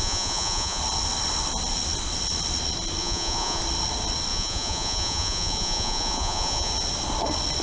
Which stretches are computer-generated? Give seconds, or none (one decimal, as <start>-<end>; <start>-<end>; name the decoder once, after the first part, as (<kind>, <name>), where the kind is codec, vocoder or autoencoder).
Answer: 0.0-0.8 (vocoder, Vocos); 3.0-3.6; 4.3-6.7